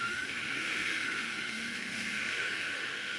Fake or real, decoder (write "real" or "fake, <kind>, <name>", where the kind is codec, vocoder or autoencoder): fake, autoencoder, DAC-VAE